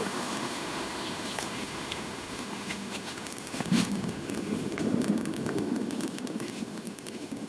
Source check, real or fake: fake